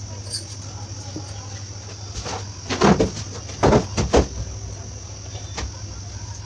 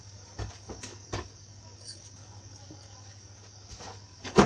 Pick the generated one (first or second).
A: second